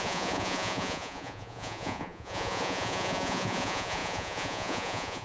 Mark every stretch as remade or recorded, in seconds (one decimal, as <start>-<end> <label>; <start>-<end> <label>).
0.0-5.2 remade